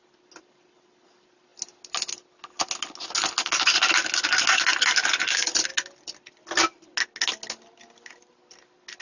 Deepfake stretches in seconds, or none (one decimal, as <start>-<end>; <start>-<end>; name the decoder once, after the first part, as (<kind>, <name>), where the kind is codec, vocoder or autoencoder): none